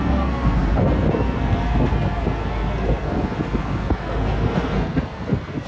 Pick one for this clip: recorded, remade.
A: remade